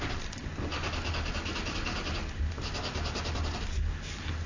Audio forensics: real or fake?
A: real